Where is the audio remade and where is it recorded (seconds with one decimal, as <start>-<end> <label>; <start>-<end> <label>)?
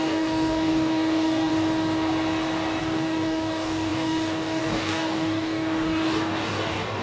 0.0-1.5 remade; 1.5-2.8 recorded; 2.8-7.0 remade